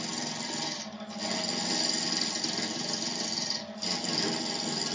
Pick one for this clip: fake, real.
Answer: real